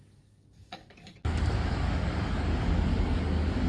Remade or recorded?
remade